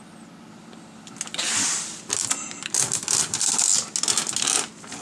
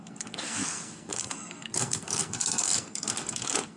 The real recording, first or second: first